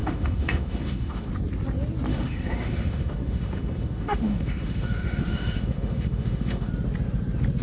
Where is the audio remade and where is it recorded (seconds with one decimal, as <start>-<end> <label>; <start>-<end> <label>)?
0.0-1.3 remade; 1.3-2.1 recorded; 2.1-6.7 remade; 6.7-7.6 recorded